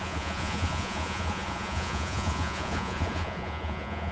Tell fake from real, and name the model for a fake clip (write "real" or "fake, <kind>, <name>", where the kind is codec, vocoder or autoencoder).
fake, vocoder, Vocos